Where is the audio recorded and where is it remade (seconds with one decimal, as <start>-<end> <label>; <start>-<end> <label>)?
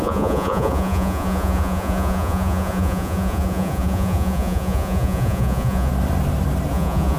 0.0-5.9 remade; 5.9-6.7 recorded; 6.7-7.2 remade